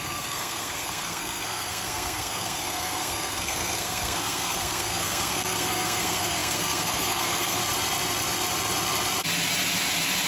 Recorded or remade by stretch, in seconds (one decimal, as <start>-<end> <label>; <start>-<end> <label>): 0.0-7.6 remade; 7.6-10.3 recorded

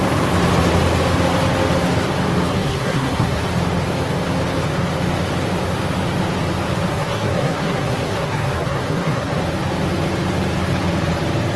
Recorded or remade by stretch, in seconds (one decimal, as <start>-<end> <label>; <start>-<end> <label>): 0.0-2.5 recorded; 2.5-3.4 remade; 3.4-6.9 recorded; 6.9-9.4 remade; 9.4-11.6 recorded

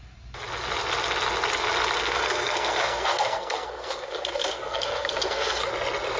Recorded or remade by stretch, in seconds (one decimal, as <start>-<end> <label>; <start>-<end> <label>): 0.0-2.0 recorded; 2.0-5.7 remade; 5.7-6.2 recorded

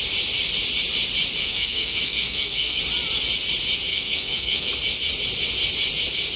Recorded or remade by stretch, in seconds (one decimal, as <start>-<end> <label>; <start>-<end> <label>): 0.0-1.4 recorded; 1.4-2.8 remade; 2.8-3.9 recorded; 3.9-4.7 remade; 4.7-6.4 recorded

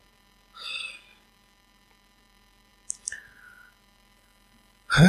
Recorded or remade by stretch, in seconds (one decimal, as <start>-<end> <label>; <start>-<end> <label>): 0.0-5.1 recorded